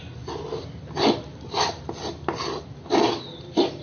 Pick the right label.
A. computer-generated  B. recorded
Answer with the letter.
B